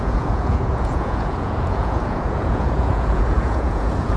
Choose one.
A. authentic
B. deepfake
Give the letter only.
B